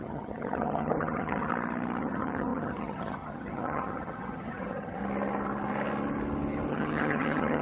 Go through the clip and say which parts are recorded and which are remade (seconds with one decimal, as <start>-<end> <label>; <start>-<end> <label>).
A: 0.0-1.5 remade; 1.5-2.0 recorded; 2.0-5.0 remade; 5.0-6.7 recorded; 6.7-7.6 remade